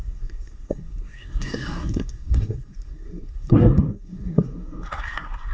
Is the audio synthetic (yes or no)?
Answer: yes